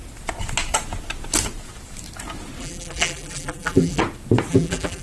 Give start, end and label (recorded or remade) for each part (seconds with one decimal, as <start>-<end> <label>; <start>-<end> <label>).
0.0-2.6 recorded; 2.6-4.0 remade; 4.0-4.5 recorded; 4.5-5.0 remade